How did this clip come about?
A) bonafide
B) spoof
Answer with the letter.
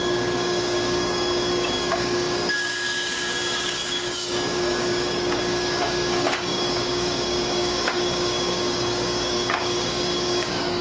B